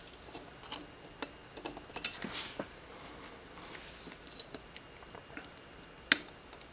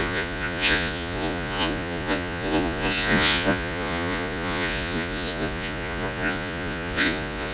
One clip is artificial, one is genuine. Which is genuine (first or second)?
first